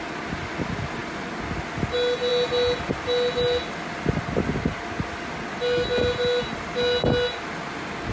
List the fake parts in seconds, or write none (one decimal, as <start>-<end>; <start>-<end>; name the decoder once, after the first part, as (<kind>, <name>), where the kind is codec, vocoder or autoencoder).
1.0-1.6 (vocoder, BigVGAN v2)